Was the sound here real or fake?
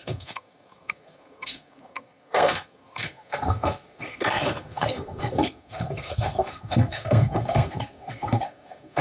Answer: fake